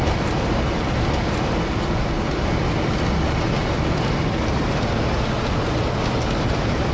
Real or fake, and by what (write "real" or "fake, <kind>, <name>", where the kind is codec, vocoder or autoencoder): real